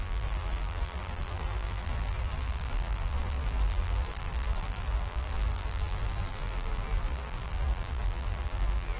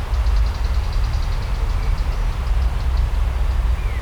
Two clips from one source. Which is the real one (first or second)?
second